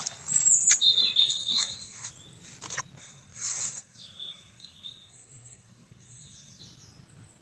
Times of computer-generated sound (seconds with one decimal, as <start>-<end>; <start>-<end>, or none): 1.2-2.1; 3.0-6.6